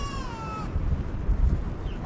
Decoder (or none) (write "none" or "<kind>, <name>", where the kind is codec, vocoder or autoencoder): none